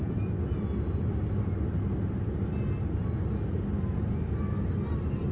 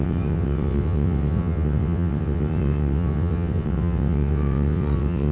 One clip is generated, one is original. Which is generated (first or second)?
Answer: second